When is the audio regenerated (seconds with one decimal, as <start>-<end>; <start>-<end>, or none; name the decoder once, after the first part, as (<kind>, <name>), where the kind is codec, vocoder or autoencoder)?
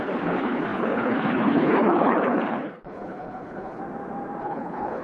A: 0.0-3.8 (codec, HILCodec); 4.4-5.0